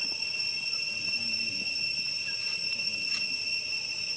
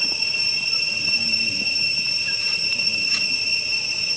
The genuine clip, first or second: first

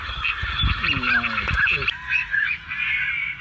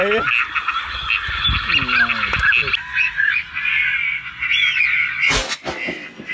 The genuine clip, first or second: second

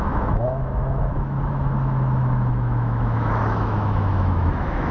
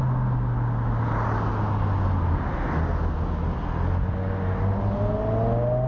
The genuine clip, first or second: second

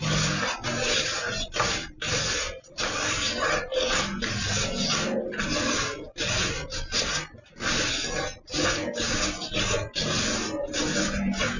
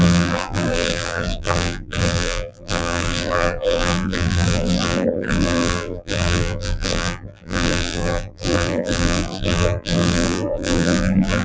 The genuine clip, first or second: first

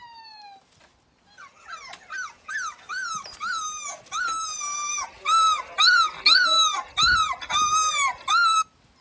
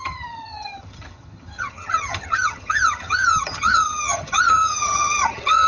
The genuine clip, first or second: first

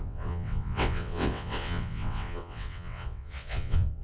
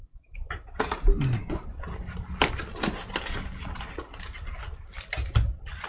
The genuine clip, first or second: second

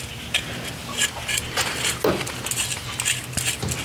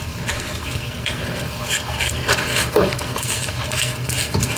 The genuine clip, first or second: first